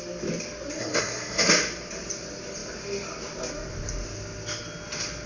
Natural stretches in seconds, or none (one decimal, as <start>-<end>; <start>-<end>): 0.0-0.8; 1.5-5.3